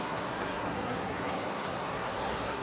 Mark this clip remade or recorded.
remade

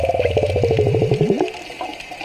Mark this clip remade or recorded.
recorded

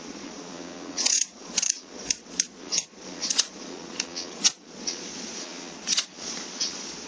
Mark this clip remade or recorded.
remade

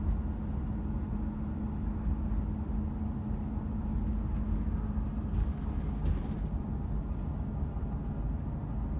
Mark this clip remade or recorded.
recorded